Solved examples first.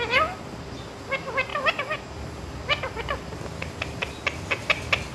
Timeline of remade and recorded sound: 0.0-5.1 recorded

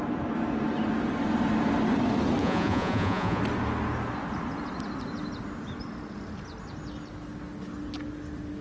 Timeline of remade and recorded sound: 0.0-2.4 recorded; 2.4-3.4 remade; 3.4-8.6 recorded